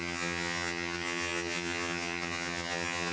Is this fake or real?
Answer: fake